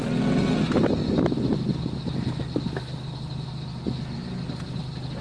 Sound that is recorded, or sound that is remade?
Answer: recorded